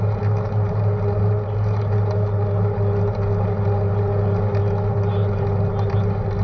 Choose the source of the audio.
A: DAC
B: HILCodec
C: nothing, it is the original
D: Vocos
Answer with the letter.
C